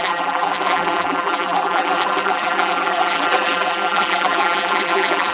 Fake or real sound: fake